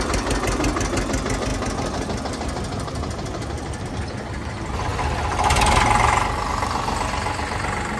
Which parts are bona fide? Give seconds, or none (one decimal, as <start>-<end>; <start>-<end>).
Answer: 0.0-8.0